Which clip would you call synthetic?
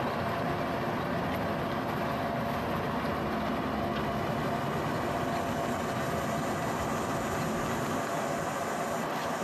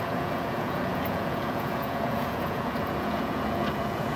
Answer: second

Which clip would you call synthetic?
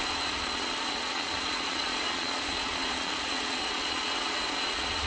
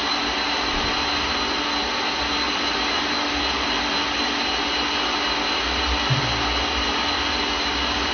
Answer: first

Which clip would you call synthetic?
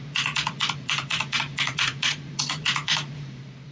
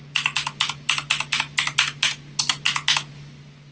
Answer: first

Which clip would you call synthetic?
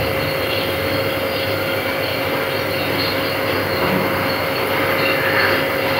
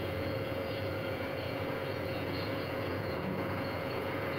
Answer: second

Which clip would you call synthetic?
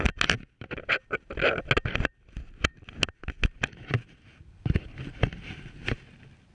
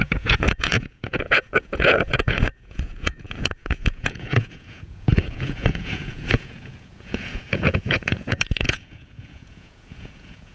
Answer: second